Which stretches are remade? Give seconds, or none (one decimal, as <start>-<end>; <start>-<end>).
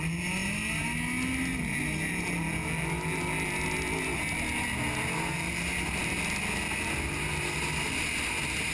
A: none